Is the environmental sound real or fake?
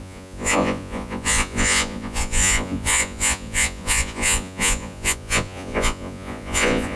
fake